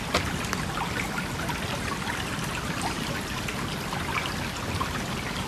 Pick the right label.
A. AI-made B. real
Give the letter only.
B